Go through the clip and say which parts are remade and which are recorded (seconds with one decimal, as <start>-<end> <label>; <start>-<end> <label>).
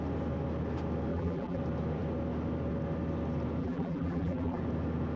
0.0-1.1 recorded; 1.1-1.6 remade; 1.6-3.6 recorded; 3.6-4.6 remade; 4.6-5.2 recorded